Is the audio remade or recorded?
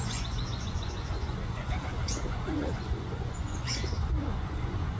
remade